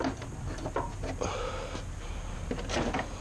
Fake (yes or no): no